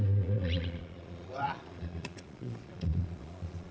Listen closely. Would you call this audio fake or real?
fake